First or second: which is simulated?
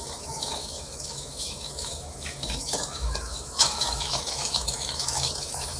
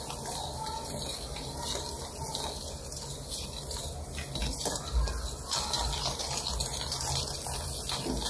first